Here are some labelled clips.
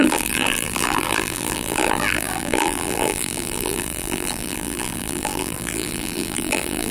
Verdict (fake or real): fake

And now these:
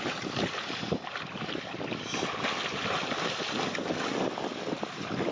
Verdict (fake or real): real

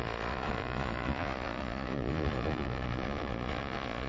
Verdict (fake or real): fake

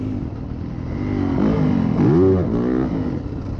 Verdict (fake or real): real